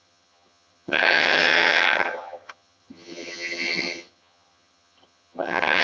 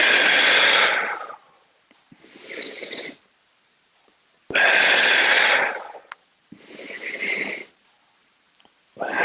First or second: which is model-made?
first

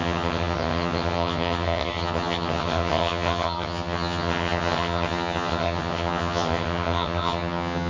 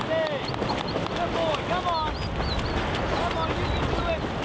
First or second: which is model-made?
first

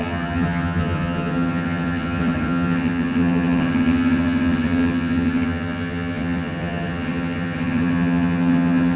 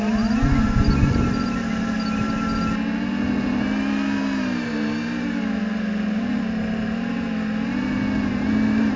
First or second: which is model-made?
first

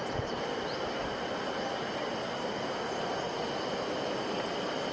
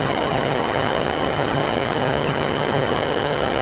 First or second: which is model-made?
second